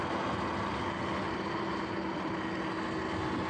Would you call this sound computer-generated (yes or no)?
no